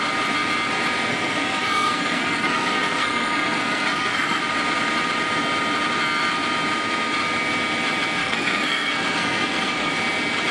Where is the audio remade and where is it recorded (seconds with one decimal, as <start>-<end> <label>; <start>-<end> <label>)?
0.0-1.1 recorded; 1.1-4.4 remade; 4.4-8.2 recorded; 8.2-9.9 remade; 9.9-10.5 recorded